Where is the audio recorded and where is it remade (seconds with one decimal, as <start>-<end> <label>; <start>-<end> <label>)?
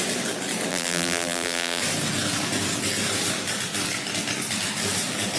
0.0-0.7 recorded; 0.7-1.8 remade; 1.8-5.4 recorded